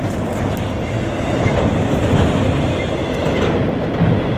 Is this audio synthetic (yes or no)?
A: no